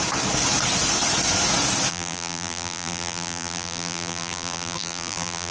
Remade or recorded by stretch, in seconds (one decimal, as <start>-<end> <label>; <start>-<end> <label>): 0.0-1.9 recorded; 1.9-5.5 remade